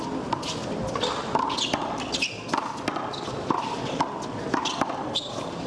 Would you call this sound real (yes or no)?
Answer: yes